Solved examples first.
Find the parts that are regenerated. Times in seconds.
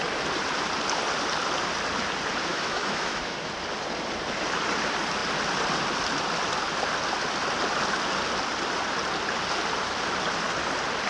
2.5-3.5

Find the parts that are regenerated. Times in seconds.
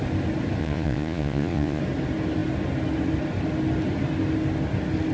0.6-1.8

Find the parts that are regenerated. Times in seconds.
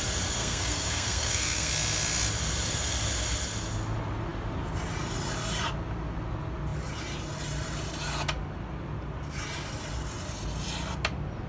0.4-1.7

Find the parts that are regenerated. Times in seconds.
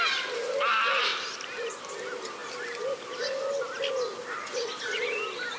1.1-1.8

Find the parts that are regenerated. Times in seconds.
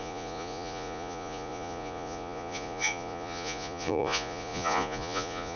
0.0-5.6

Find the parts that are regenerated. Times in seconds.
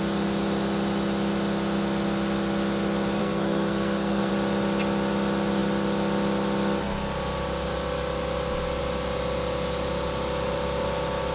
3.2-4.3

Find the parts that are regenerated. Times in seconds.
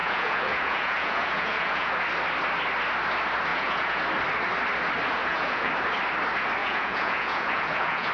0.0-1.9; 3.5-4.0; 5.2-5.7; 6.6-8.1